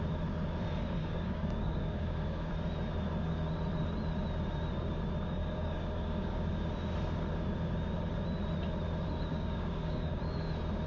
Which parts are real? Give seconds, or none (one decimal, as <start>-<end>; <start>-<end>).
0.0-1.0; 2.5-5.4; 6.5-9.3; 10.2-10.9